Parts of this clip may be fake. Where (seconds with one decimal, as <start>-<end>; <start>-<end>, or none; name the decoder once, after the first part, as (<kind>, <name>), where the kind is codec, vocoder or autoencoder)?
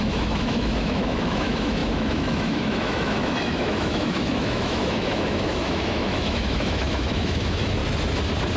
0.0-7.8 (autoencoder, DAC-VAE)